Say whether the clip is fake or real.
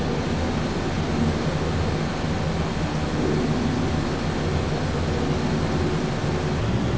real